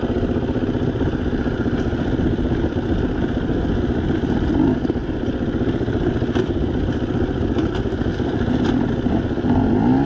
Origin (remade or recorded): recorded